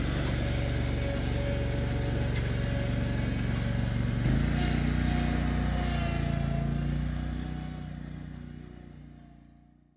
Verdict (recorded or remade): recorded